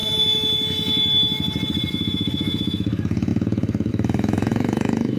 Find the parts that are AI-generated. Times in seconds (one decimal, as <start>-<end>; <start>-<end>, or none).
1.9-5.2